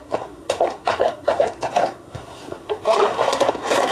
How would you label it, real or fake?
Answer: fake